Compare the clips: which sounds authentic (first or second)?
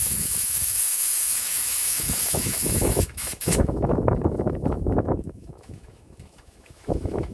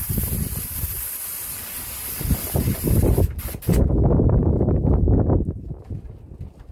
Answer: second